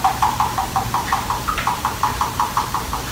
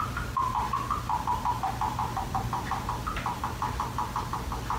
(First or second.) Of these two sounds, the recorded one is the second